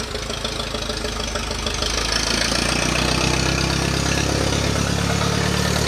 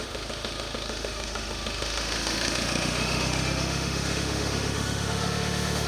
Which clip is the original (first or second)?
first